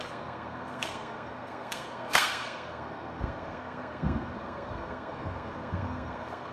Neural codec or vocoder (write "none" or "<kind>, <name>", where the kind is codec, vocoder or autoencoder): codec, SNAC